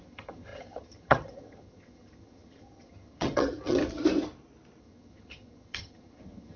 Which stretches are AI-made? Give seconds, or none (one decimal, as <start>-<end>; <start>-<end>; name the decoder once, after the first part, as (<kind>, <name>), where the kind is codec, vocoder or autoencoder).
0.0-3.8 (vocoder, HiFi-GAN); 4.8-6.6